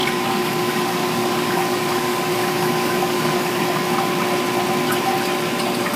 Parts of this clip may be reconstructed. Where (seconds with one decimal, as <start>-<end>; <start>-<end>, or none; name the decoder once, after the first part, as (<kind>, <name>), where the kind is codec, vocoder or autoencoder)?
0.0-3.6 (codec, DAC)